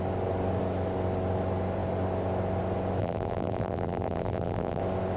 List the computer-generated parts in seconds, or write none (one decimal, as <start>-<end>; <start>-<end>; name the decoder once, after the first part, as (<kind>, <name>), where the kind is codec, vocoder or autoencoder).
3.0-4.8 (vocoder, BigVGAN v2)